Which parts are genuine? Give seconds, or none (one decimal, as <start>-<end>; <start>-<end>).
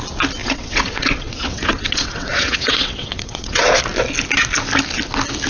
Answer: 0.0-0.4; 3.7-5.5